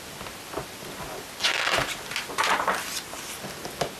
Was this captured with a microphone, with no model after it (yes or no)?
yes